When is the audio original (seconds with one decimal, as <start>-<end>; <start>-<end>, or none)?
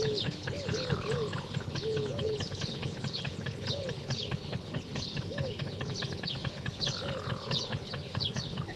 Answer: none